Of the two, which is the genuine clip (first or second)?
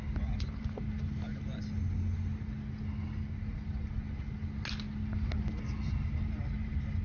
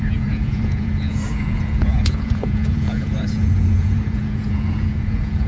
first